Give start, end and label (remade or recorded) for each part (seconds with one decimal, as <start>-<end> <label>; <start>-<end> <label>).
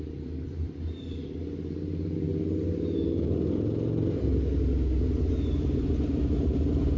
0.0-2.3 remade; 2.3-6.0 recorded; 6.0-7.0 remade